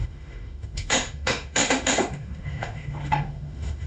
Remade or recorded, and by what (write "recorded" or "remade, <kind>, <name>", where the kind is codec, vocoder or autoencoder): remade, autoencoder, DAC-VAE